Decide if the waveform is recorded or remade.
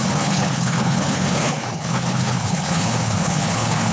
remade